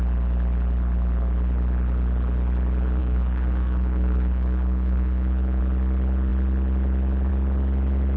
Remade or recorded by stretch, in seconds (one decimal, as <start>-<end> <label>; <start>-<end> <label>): 0.0-3.0 recorded; 3.0-5.6 remade; 5.6-8.2 recorded